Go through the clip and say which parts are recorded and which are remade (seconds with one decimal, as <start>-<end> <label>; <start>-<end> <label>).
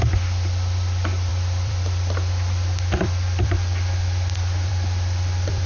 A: 0.0-5.7 remade